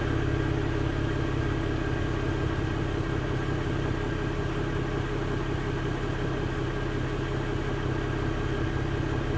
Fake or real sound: real